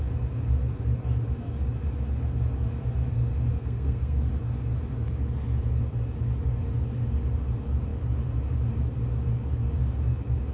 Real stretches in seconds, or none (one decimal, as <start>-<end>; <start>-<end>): 0.0-3.5; 4.3-10.5